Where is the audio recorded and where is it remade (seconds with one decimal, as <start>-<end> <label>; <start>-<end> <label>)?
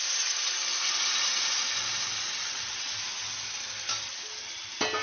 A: 0.0-2.4 recorded; 2.4-3.0 remade; 3.0-5.0 recorded